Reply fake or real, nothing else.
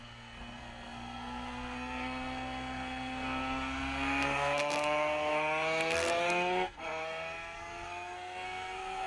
fake